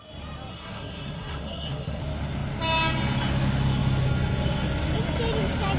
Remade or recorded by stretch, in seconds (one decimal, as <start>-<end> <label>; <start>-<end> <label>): 0.0-0.5 recorded; 0.5-2.0 remade; 2.0-5.8 recorded